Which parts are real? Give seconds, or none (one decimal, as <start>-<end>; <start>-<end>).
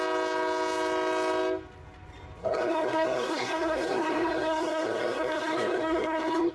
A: 0.0-2.4